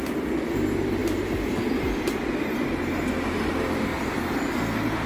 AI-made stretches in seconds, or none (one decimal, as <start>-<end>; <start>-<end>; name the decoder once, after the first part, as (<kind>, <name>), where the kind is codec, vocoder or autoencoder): 1.0-2.5 (vocoder, BigVGAN v2); 3.9-4.5